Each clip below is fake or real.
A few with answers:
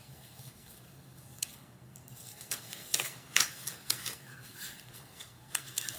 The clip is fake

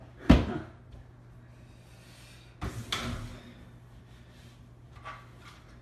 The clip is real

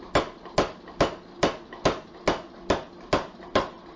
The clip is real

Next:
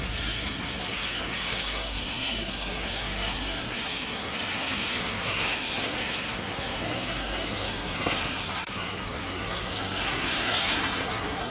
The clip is fake